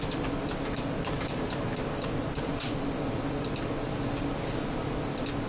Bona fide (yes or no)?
yes